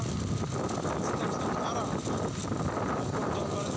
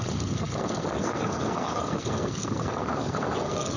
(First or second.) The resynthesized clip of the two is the second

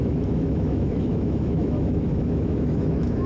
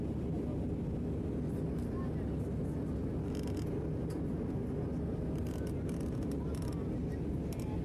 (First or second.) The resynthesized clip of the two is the first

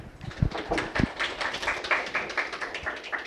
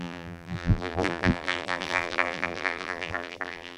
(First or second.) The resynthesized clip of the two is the second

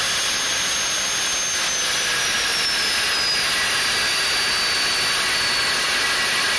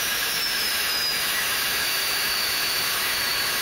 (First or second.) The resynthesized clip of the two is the second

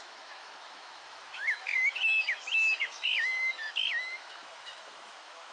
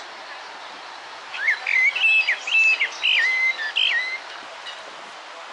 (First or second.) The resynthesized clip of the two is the first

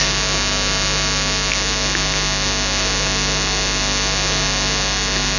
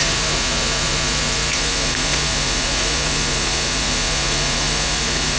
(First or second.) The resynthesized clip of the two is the second